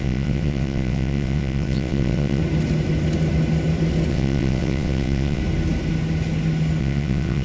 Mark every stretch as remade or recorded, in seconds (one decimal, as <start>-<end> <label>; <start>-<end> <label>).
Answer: 0.0-2.4 remade; 2.4-4.1 recorded; 4.1-5.4 remade; 5.4-6.8 recorded; 6.8-7.4 remade